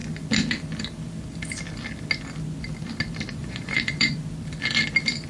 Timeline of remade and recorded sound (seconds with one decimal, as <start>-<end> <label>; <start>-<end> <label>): 0.0-3.4 recorded; 3.4-4.2 remade; 4.2-5.3 recorded